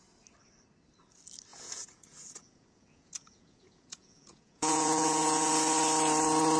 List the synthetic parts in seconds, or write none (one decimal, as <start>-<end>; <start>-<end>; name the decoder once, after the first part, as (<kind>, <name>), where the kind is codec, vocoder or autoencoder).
1.5-5.5 (vocoder, Vocos)